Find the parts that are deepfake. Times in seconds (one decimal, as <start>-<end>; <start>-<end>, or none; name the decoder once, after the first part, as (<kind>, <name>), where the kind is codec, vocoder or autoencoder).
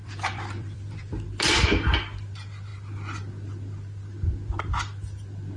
0.0-1.2 (vocoder, BigVGAN v2)